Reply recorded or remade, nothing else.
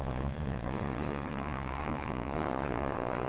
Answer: remade